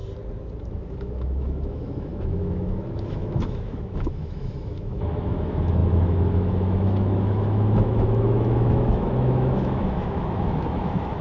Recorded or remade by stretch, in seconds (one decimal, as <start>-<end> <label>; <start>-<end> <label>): 0.0-0.6 recorded; 0.6-11.2 remade